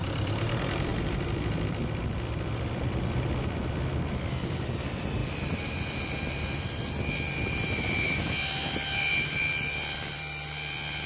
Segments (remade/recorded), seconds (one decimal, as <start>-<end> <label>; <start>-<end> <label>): 0.0-11.1 remade